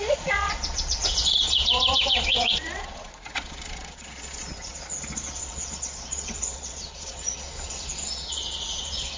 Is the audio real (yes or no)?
no